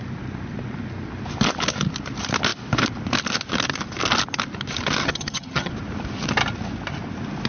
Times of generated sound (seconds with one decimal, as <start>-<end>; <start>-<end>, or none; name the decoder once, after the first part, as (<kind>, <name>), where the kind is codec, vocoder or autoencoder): 5.0-5.7 (vocoder, HiFi-GAN)